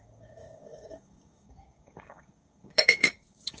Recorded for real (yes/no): no